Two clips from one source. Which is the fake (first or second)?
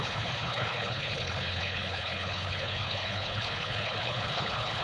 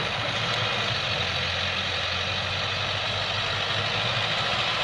first